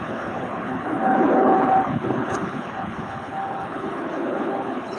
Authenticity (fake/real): fake